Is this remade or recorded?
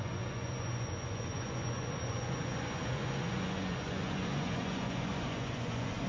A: remade